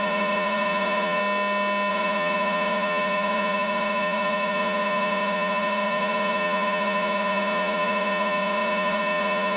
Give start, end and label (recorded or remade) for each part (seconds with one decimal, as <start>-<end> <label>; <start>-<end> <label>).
0.0-1.2 remade; 1.2-1.9 recorded; 1.9-9.6 remade